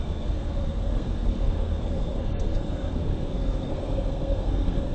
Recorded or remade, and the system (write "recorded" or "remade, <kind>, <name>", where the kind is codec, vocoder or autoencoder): remade, codec, SNAC